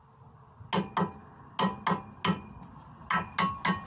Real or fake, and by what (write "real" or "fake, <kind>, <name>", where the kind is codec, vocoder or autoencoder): real